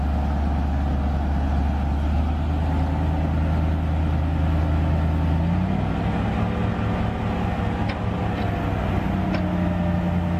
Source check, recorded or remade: recorded